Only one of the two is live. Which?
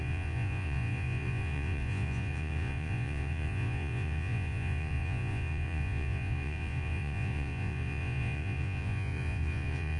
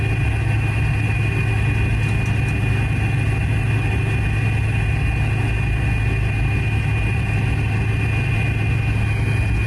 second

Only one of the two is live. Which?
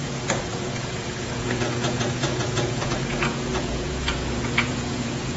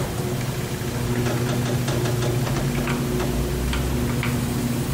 second